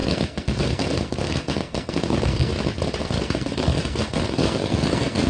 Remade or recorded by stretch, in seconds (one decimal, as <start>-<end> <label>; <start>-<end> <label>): 0.0-2.5 remade; 2.5-3.0 recorded; 3.0-5.3 remade